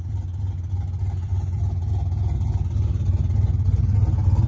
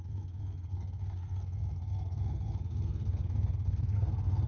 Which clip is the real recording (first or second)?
first